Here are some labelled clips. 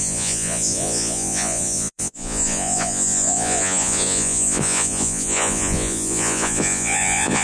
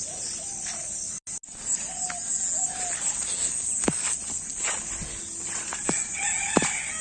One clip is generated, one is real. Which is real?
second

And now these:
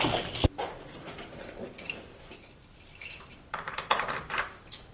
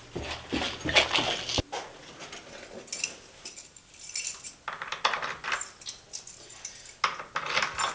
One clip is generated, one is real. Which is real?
second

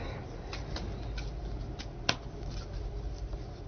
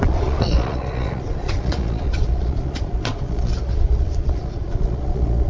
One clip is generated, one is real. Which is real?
first